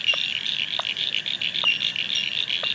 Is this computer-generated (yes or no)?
no